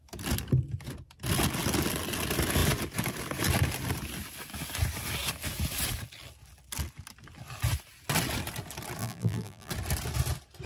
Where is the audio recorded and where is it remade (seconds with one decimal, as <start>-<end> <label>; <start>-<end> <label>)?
0.0-9.0 recorded; 9.0-9.7 remade; 9.7-10.7 recorded

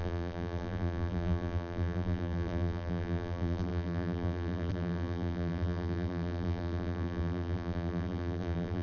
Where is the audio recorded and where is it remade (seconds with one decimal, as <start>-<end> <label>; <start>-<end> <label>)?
0.0-8.8 remade

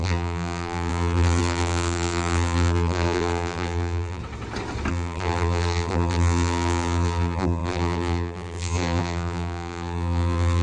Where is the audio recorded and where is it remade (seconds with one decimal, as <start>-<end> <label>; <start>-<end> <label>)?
0.0-4.2 remade; 4.2-4.9 recorded; 4.9-10.6 remade

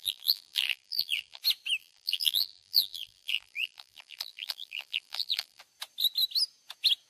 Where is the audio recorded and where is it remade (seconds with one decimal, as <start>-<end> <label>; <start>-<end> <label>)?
0.0-1.4 remade; 1.4-1.8 recorded; 1.8-5.6 remade; 5.6-7.1 recorded

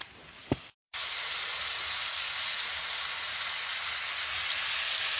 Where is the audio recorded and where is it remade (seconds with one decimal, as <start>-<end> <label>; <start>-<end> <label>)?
0.0-0.4 recorded; 0.4-2.3 remade; 2.3-5.2 recorded

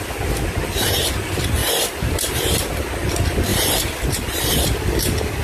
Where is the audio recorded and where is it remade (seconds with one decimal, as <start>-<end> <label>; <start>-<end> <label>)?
0.0-1.6 recorded; 1.6-2.4 remade; 2.4-3.5 recorded; 3.5-4.6 remade; 4.6-5.4 recorded

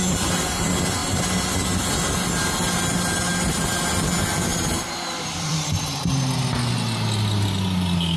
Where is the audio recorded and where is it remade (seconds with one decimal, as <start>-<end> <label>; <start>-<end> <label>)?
0.0-4.5 recorded; 4.5-5.8 remade; 5.8-8.2 recorded